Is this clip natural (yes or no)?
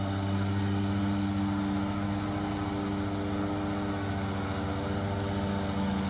yes